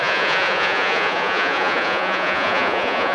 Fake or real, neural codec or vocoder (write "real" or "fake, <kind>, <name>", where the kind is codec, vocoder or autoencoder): fake, vocoder, Vocos